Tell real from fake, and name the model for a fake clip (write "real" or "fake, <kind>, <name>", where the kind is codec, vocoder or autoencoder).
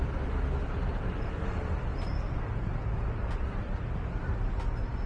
real